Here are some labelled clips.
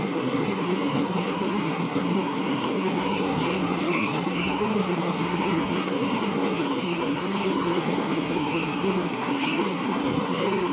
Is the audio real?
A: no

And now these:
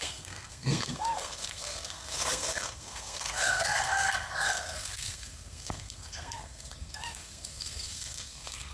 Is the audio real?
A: no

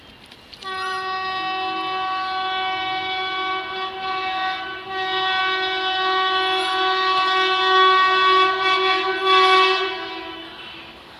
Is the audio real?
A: yes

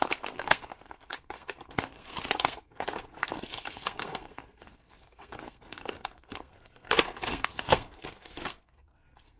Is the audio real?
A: no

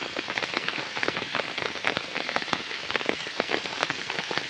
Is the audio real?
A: no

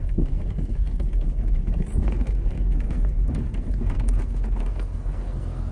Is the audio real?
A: no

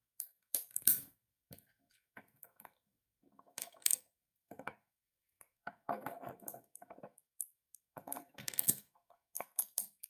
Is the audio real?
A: no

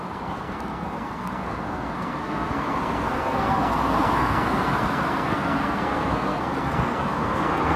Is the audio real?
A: no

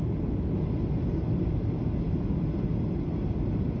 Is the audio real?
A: yes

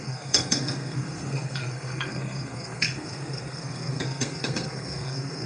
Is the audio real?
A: no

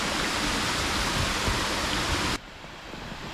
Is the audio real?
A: yes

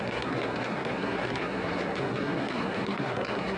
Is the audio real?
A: no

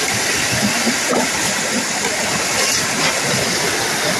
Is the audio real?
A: yes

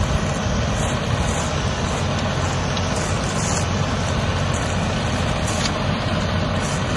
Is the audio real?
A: yes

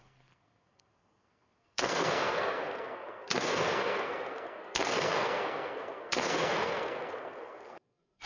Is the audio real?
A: no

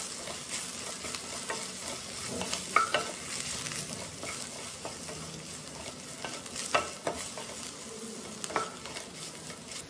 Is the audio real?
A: yes